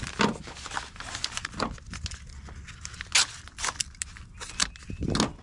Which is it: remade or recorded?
recorded